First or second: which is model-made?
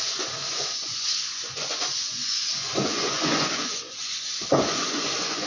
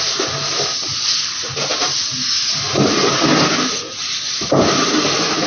first